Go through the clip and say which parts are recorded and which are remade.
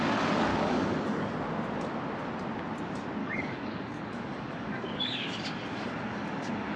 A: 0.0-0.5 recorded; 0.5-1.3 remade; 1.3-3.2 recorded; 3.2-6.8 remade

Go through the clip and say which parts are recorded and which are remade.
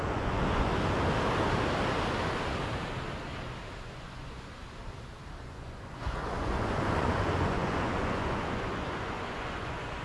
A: 0.0-0.7 remade; 0.7-3.8 recorded; 3.8-4.6 remade; 4.6-5.4 recorded; 5.4-10.0 remade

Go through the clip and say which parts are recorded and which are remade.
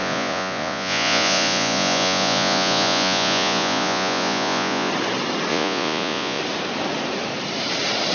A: 0.0-4.9 remade; 4.9-5.5 recorded; 5.5-6.4 remade; 6.4-8.1 recorded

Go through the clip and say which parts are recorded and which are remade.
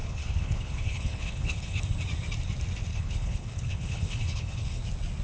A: 0.0-1.8 remade; 1.8-2.9 recorded; 2.9-4.8 remade; 4.8-5.2 recorded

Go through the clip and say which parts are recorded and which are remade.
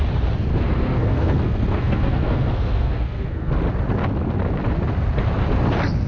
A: 0.0-0.5 recorded; 0.5-3.5 remade; 3.5-6.1 recorded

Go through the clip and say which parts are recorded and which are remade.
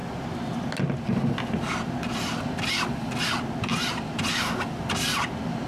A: 0.0-3.7 recorded; 3.7-4.3 remade; 4.3-5.7 recorded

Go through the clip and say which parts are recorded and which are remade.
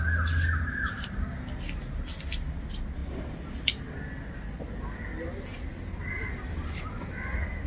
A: 0.0-7.7 recorded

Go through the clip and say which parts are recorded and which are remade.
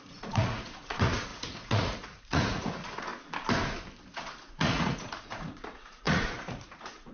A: 0.0-3.1 remade; 3.1-4.1 recorded; 4.1-7.1 remade